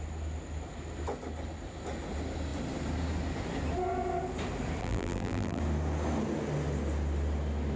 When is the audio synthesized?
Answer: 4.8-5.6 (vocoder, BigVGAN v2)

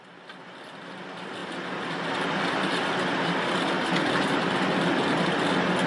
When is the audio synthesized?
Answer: none

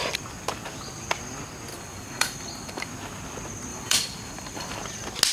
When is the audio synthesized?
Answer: 1.7-2.9 (vocoder, BigVGAN v2); 3.7-4.8

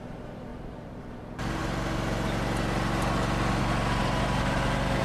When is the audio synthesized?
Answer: 0.5-1.0 (vocoder, BigVGAN v2); 4.0-5.0

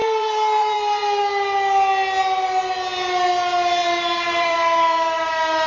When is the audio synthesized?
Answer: 0.0-1.2 (vocoder, BigVGAN v2); 3.8-5.3

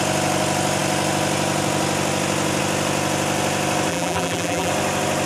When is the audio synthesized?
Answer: 3.9-4.7 (vocoder, BigVGAN v2)

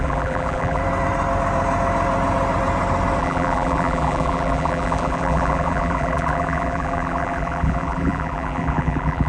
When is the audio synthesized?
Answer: 0.0-0.8 (vocoder, BigVGAN v2); 3.2-9.3